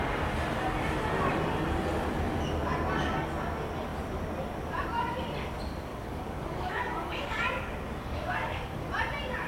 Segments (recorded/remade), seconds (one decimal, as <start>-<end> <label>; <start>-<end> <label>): 0.0-5.9 recorded; 5.9-8.9 remade; 8.9-9.5 recorded